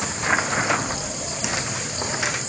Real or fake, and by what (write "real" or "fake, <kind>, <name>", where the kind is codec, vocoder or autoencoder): fake, vocoder, BigVGAN v2